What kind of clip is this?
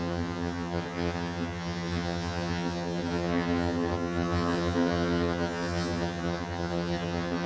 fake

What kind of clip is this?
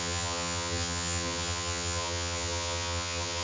fake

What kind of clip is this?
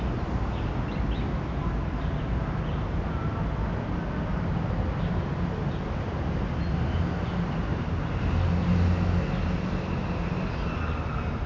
real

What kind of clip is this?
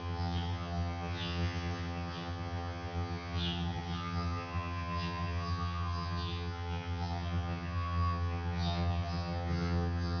fake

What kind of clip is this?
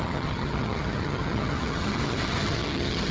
fake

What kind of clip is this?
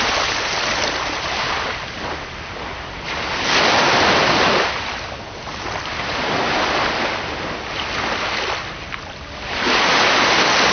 real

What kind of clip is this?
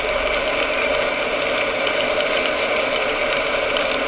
real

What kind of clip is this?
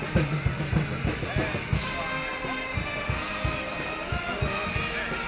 real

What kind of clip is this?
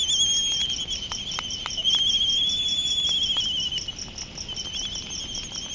real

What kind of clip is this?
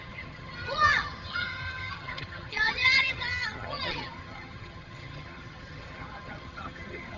fake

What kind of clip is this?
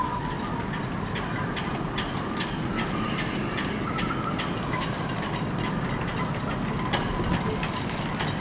real